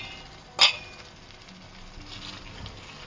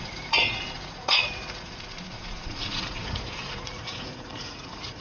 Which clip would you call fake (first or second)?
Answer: second